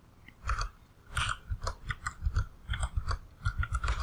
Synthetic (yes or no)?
yes